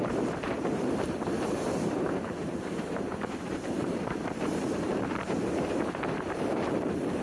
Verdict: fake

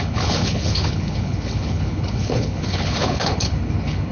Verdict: fake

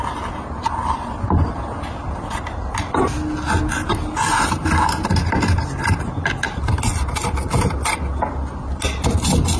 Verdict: real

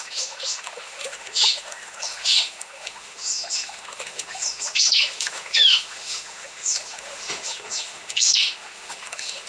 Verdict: fake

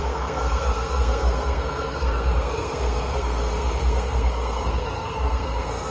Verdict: fake